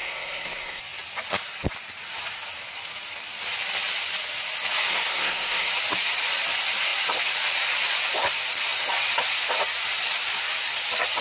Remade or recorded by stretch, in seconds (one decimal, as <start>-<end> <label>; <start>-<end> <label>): 0.0-0.8 remade; 0.8-4.9 recorded; 4.9-5.7 remade; 5.7-11.2 recorded